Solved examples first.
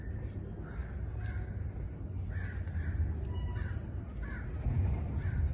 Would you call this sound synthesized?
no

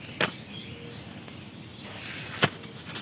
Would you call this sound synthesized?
no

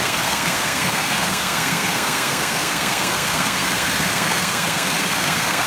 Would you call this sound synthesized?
yes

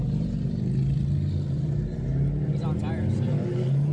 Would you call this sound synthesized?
no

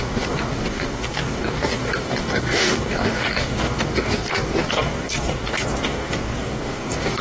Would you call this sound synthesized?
yes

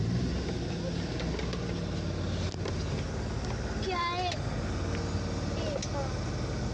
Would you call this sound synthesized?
no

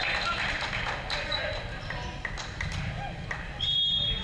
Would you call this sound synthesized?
no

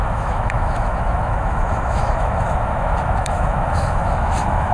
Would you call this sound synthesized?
yes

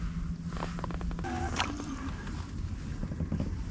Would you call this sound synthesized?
no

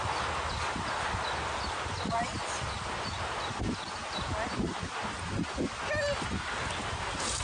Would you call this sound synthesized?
no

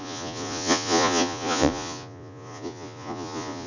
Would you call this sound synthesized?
yes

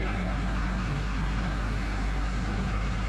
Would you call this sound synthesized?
yes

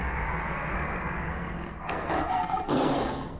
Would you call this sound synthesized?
yes